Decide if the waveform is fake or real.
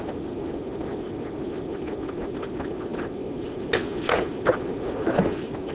real